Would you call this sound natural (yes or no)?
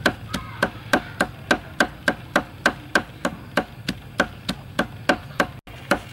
yes